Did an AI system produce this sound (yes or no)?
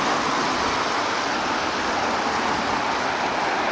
no